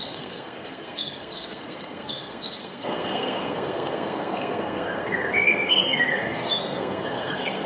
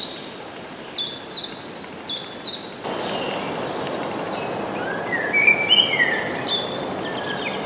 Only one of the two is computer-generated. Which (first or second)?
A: first